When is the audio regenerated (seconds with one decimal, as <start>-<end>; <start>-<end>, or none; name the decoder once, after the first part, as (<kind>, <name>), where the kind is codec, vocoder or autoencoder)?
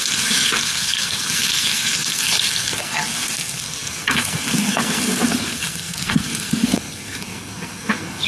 0.0-8.3 (codec, SNAC)